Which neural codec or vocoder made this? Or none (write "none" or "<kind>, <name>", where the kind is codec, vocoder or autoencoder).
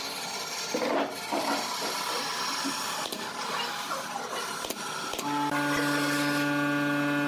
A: none